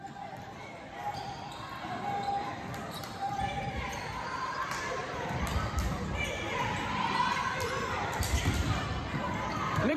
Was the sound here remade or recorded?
remade